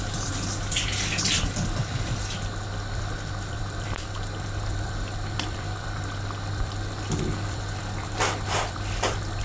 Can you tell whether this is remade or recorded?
remade